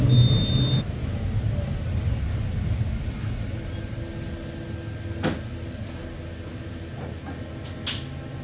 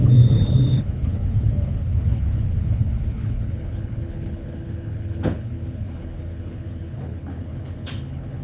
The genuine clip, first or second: first